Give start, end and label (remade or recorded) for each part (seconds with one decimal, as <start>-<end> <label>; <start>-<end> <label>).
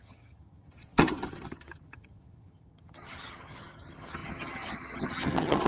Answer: 0.0-5.7 remade